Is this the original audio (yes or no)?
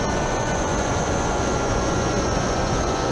no